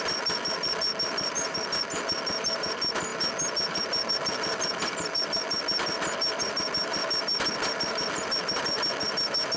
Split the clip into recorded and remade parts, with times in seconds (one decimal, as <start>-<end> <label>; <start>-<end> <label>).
0.0-3.1 remade; 3.1-4.1 recorded; 4.1-9.6 remade